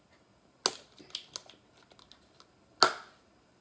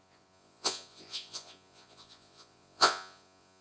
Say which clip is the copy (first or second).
second